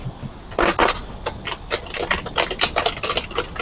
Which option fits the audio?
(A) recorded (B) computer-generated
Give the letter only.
A